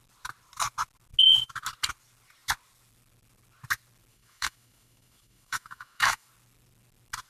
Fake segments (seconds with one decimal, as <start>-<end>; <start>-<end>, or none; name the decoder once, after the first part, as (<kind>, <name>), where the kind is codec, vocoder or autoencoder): 4.1-6.3 (autoencoder, DAC-VAE)